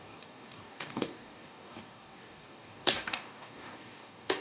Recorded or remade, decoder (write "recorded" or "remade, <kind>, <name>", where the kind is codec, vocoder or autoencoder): remade, codec, DAC